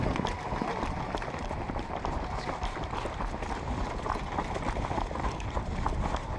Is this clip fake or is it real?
real